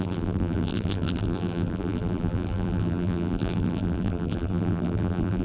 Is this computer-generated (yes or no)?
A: yes